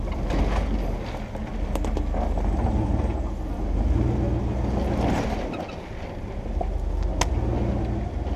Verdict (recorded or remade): recorded